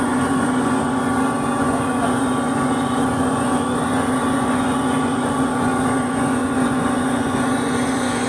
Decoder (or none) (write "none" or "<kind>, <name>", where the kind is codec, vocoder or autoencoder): vocoder, Vocos